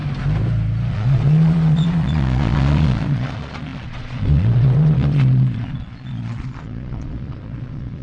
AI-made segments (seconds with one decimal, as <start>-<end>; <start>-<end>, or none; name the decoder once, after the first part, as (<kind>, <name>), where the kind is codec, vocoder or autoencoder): 0.9-8.0 (vocoder, Vocos)

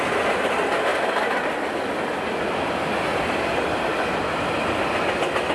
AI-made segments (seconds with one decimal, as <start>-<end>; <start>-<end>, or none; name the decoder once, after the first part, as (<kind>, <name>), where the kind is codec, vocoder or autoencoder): none

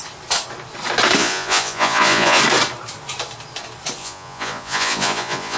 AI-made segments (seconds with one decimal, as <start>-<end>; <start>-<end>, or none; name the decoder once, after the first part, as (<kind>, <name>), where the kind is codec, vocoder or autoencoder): 1.2-2.4 (vocoder, Vocos); 4.0-5.6

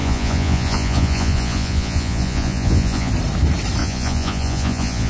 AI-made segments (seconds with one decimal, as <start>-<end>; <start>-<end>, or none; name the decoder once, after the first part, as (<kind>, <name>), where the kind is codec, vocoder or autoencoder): 0.0-3.1 (vocoder, Vocos); 3.8-5.1

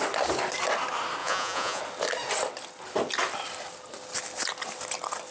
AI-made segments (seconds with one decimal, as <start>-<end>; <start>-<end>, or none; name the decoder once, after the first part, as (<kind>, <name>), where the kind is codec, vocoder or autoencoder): 1.2-1.8 (vocoder, Vocos)

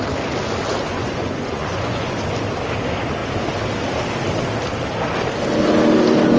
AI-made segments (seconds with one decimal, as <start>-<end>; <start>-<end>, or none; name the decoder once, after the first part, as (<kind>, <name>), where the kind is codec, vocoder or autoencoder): 0.9-2.2 (vocoder, Vocos)